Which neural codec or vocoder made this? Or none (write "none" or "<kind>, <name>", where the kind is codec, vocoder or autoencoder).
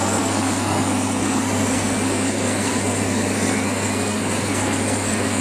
codec, SNAC